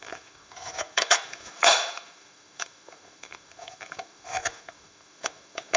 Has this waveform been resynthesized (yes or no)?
yes